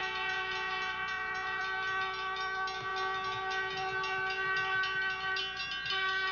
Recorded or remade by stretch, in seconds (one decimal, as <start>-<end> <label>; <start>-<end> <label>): 0.0-1.6 remade; 1.6-6.3 recorded